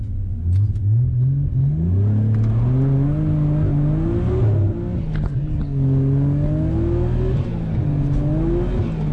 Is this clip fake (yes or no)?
no